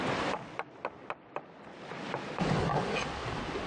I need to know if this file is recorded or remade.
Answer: recorded